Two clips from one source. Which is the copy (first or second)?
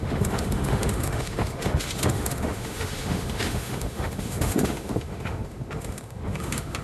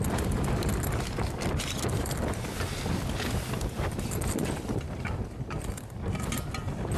first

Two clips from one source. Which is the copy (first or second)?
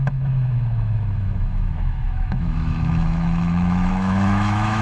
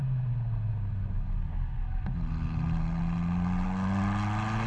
first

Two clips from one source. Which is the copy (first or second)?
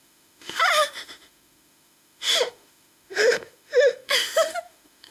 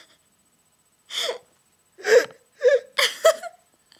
first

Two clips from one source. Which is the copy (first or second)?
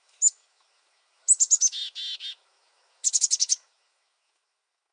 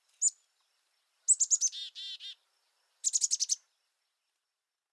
first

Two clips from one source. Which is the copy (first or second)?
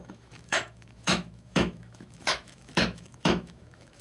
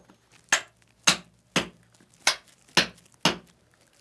first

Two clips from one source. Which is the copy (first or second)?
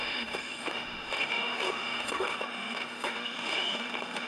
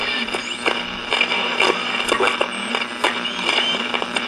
first